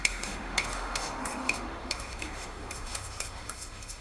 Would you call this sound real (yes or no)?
no